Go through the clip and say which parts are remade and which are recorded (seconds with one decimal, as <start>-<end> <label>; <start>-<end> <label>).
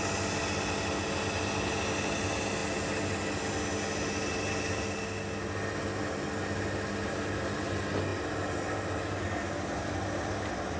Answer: 0.0-10.8 recorded